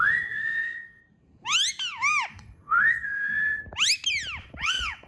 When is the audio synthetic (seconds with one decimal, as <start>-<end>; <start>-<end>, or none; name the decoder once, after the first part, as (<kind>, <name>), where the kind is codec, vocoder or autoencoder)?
0.0-1.0 (vocoder, WaveNeXt); 2.3-3.6; 4.4-5.1